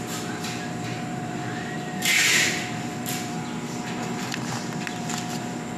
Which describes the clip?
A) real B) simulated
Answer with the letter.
B